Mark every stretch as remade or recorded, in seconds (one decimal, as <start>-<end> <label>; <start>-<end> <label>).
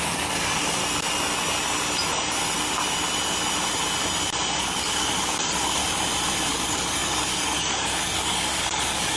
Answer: 0.0-0.8 remade; 0.8-4.6 recorded; 4.6-5.8 remade; 5.8-6.5 recorded; 6.5-9.2 remade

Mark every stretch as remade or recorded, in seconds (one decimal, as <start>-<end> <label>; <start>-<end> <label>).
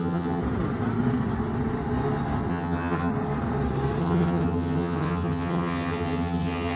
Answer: 0.0-0.4 remade; 0.4-2.5 recorded; 2.5-3.1 remade; 3.1-4.0 recorded; 4.0-6.8 remade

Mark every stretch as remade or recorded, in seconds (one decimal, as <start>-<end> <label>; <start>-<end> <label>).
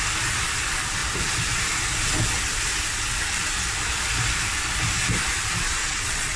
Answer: 0.0-5.8 recorded; 5.8-6.4 remade